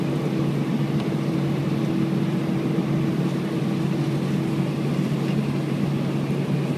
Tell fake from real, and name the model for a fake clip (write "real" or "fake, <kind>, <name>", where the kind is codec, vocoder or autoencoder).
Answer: real